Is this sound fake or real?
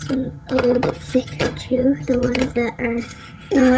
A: fake